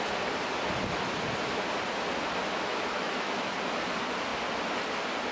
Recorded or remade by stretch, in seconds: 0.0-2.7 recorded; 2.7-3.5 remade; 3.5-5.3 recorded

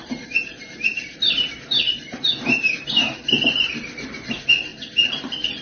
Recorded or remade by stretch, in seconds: 0.0-4.7 remade; 4.7-5.6 recorded

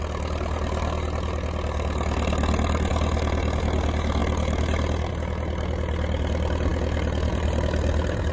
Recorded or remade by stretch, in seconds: 0.0-8.3 recorded

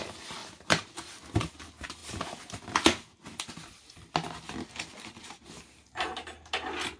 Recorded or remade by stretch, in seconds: 0.0-7.0 recorded

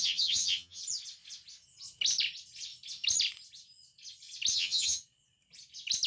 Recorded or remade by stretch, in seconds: 0.0-0.8 remade; 0.8-4.5 recorded; 4.5-5.0 remade; 5.0-6.1 recorded

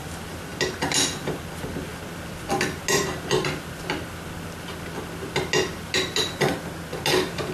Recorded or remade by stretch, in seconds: 0.0-7.5 recorded

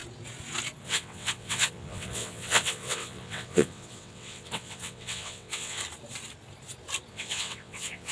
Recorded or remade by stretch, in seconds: 0.0-0.8 recorded; 0.8-5.8 remade; 5.8-7.1 recorded; 7.1-8.1 remade